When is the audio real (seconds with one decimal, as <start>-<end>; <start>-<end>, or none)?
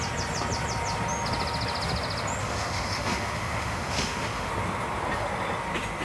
0.0-2.4; 4.5-6.0